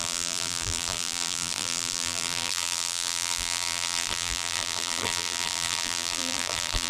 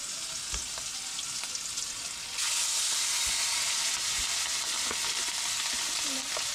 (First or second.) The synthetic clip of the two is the first